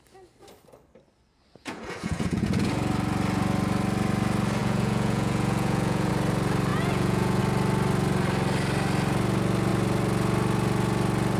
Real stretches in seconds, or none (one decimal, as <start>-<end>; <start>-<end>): 0.0-1.6; 2.7-4.6; 6.1-6.7; 7.4-11.4